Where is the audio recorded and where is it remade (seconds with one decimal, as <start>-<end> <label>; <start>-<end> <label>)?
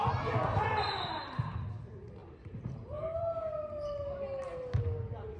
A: 0.0-0.5 recorded; 0.5-1.6 remade; 1.6-2.2 recorded; 2.2-3.2 remade; 3.2-5.4 recorded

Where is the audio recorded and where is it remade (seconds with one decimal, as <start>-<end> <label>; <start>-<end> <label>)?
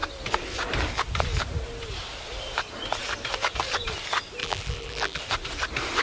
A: 0.0-4.4 recorded; 4.4-5.2 remade; 5.2-6.0 recorded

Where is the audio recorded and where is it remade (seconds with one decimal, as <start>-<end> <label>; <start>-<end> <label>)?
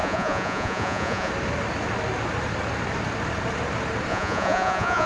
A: 0.0-1.3 remade; 1.3-4.1 recorded; 4.1-5.1 remade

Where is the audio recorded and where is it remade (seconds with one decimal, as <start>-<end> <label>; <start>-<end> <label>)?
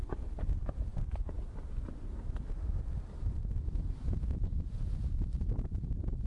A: 0.0-6.3 remade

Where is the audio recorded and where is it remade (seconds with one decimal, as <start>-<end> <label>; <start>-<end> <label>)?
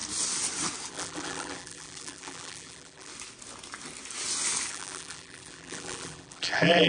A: 0.0-0.9 recorded; 0.9-3.1 remade; 3.1-4.7 recorded; 4.7-6.9 remade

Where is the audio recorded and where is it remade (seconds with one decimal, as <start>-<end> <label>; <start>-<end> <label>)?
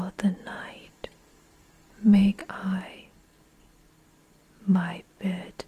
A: 0.0-0.8 recorded; 0.8-2.4 remade; 2.4-5.7 recorded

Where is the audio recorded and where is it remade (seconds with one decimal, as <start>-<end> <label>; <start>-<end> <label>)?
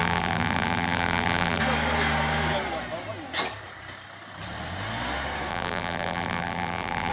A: 0.0-1.6 remade; 1.6-5.5 recorded; 5.5-7.1 remade